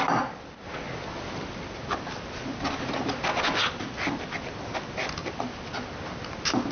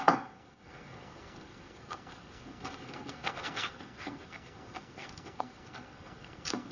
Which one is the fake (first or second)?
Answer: second